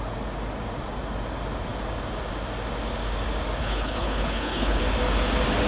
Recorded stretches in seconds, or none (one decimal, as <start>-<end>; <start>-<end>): 0.0-3.6; 4.8-5.7